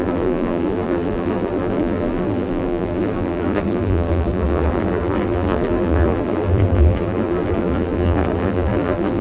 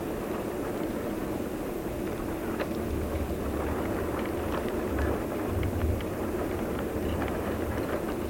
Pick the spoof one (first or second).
first